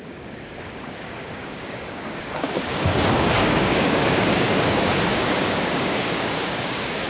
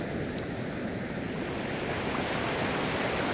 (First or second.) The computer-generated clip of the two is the first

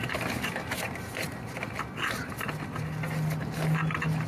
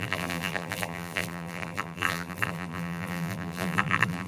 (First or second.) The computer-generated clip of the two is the second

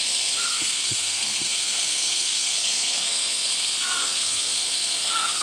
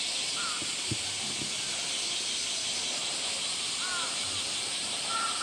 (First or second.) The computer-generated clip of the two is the first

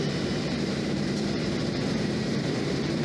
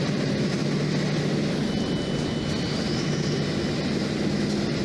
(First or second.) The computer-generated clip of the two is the first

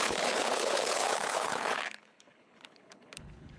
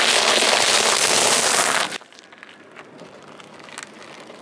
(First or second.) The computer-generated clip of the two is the first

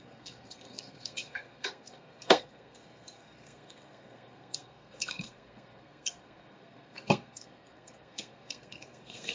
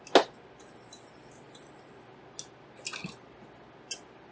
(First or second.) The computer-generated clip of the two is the first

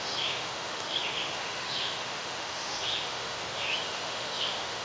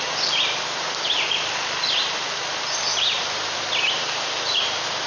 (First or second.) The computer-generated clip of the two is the first